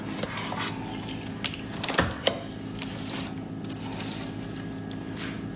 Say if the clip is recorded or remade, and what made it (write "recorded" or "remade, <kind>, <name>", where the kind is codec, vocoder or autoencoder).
recorded